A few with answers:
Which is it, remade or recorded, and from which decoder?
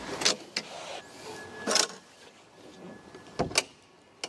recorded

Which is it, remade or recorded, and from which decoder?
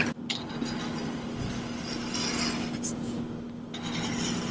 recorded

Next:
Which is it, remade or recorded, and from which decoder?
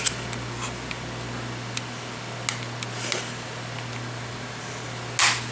recorded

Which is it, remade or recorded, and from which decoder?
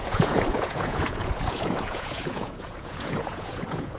remade, vocoder, Vocos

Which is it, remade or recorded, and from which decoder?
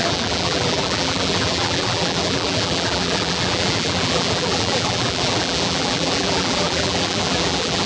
remade, vocoder, BigVGAN v2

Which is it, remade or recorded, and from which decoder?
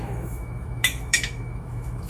remade, autoencoder, DAC-VAE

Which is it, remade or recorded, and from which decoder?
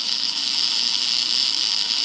remade, autoencoder, DAC-VAE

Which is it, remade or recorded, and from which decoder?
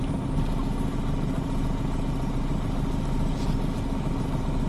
recorded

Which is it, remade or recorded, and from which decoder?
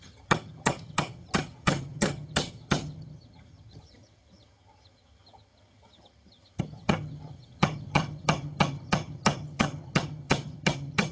remade, vocoder, HiFi-GAN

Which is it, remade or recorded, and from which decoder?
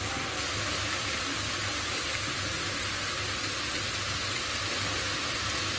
recorded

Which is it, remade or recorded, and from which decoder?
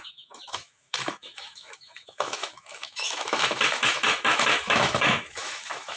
remade, autoencoder, DAC-VAE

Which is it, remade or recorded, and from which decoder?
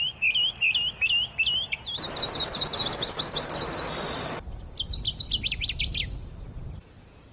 recorded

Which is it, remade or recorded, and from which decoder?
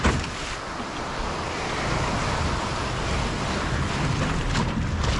recorded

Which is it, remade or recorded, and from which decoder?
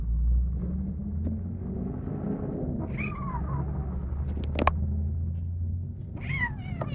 recorded